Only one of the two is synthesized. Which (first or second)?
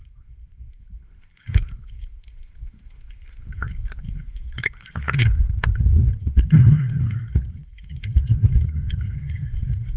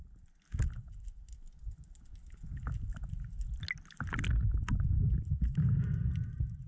first